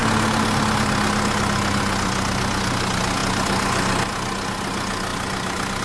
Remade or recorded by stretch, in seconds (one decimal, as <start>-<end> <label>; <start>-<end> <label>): 0.0-5.8 recorded